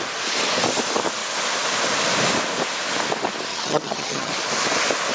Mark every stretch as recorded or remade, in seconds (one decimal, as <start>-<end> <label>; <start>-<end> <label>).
0.0-3.5 recorded; 3.5-4.3 remade; 4.3-5.1 recorded